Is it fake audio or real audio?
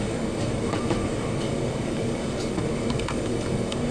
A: fake